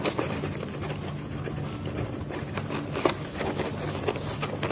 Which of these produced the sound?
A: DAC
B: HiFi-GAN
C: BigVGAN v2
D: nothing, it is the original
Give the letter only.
D